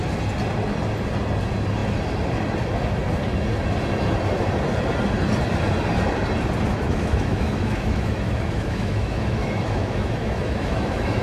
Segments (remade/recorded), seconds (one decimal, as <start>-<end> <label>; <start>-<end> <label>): 0.0-6.7 recorded; 6.7-11.2 remade